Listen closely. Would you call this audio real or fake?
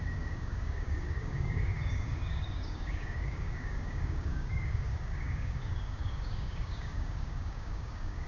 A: fake